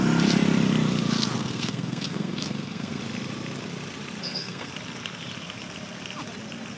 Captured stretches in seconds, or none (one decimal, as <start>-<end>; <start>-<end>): 0.0-1.4; 3.0-4.2; 4.7-6.8